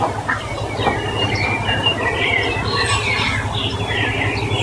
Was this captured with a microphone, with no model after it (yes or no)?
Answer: yes